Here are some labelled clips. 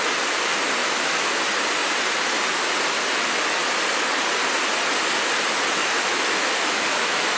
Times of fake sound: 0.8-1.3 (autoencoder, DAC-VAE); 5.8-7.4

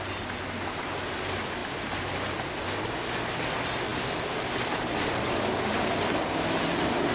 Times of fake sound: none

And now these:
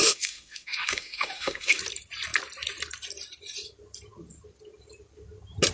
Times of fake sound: 0.0-1.8 (autoencoder, DAC-VAE)

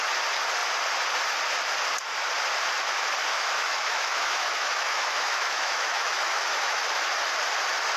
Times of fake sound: 3.3-6.8 (autoencoder, DAC-VAE)

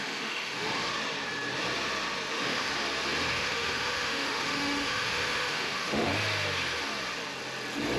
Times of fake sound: 0.0-0.7 (autoencoder, DAC-VAE); 2.3-2.7; 3.3-6.1

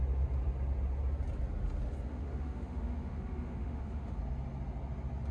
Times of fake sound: 2.1-4.2 (autoencoder, DAC-VAE)

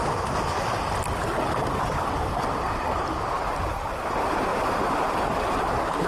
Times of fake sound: none